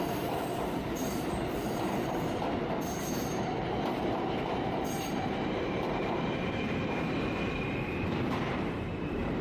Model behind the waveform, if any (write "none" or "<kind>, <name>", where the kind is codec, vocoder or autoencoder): vocoder, BigVGAN v2